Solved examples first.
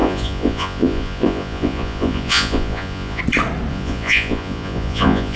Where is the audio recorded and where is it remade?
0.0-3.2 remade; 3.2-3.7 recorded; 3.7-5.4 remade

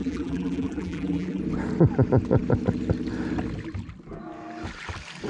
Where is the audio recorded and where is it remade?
0.0-1.4 remade; 1.4-5.3 recorded